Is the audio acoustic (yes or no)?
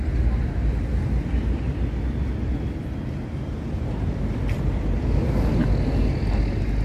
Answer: yes